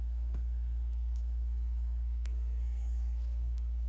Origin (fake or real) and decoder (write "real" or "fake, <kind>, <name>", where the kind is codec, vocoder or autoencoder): fake, codec, SNAC